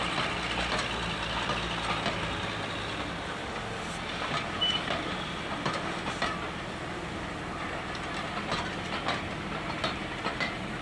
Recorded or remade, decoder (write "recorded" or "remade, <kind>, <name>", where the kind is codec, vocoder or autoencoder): recorded